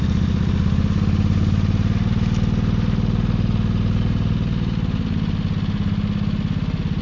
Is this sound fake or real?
real